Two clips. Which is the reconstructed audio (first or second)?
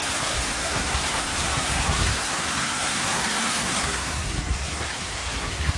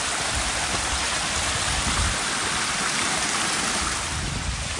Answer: first